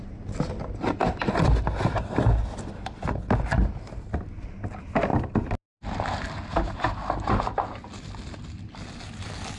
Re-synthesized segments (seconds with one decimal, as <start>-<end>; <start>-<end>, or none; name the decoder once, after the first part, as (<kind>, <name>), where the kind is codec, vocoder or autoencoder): none